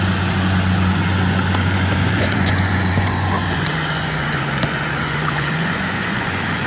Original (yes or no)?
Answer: no